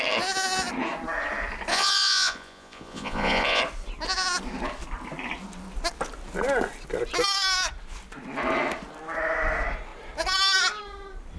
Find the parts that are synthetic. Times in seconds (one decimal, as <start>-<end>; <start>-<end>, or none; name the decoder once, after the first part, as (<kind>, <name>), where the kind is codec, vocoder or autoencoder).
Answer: 1.7-3.6 (vocoder, Vocos)